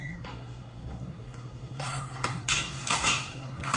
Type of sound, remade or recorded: remade